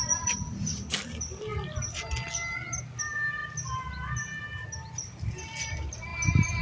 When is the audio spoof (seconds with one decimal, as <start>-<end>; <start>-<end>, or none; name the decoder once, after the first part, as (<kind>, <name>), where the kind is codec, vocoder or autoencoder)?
none